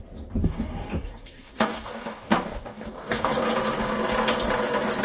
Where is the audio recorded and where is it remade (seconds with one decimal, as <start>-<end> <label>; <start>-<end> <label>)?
0.0-0.4 recorded; 0.4-3.4 remade; 3.4-5.0 recorded